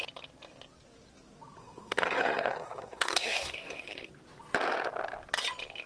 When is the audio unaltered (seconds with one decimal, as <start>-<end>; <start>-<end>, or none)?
0.0-1.6; 4.1-5.9